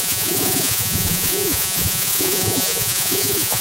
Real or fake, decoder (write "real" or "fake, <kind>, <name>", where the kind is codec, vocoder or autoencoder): fake, vocoder, Vocos